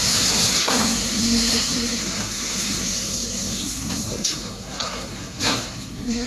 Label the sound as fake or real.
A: fake